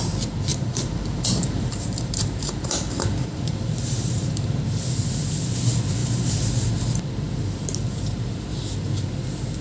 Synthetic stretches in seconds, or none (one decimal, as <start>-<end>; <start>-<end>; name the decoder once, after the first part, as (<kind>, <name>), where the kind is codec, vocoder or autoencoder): 0.5-4.6 (vocoder, BigVGAN v2); 6.0-6.7

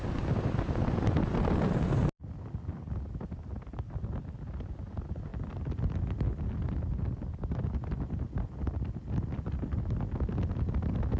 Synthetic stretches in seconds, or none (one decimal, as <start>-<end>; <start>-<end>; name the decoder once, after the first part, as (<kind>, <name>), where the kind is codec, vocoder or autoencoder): none